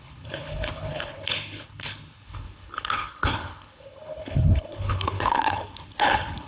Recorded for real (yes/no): no